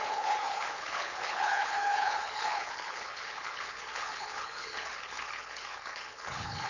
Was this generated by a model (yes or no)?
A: yes